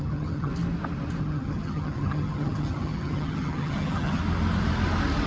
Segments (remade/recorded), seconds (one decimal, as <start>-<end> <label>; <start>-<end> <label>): 0.0-0.5 remade; 0.5-1.2 recorded; 1.2-4.2 remade; 4.2-5.3 recorded